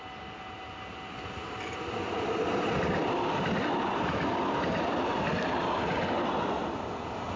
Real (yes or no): yes